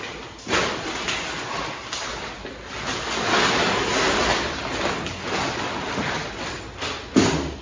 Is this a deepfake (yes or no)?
no